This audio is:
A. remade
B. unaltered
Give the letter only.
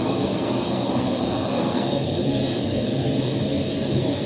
A